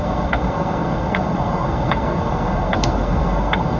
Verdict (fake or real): fake